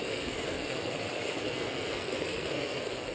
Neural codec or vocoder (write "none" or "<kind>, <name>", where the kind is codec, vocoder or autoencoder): codec, SNAC